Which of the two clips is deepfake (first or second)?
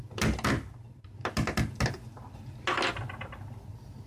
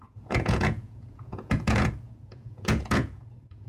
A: second